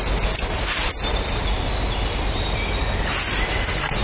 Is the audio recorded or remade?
recorded